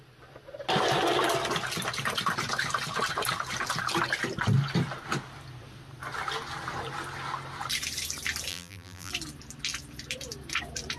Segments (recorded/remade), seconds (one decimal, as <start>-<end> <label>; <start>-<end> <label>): 0.0-8.5 recorded; 8.5-9.1 remade; 9.1-11.0 recorded